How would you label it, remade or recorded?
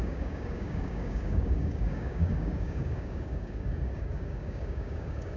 remade